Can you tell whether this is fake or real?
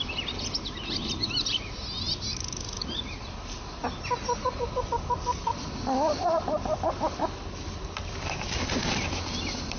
real